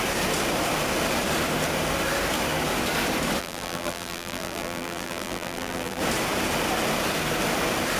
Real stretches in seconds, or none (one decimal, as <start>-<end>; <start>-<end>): 0.0-3.4; 6.0-8.0